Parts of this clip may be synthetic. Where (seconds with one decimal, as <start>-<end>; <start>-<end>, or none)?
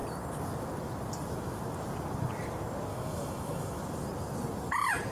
2.9-3.8